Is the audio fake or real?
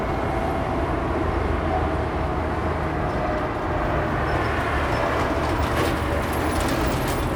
real